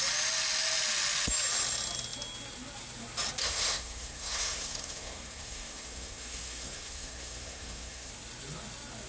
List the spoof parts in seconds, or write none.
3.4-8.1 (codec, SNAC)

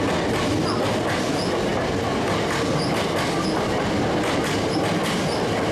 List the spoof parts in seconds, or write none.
none

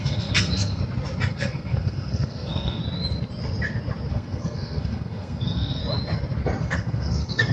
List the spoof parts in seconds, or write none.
0.0-0.8 (codec, SNAC); 1.3-2.8; 4.1-5.8; 6.6-7.5

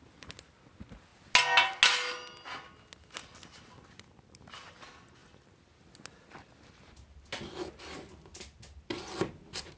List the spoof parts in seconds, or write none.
none

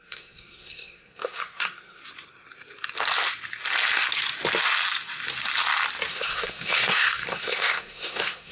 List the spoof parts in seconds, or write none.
0.0-2.0 (codec, SNAC); 6.1-8.5